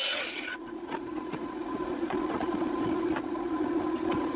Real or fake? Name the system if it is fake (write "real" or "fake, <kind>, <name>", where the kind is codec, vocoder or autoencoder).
fake, vocoder, Vocos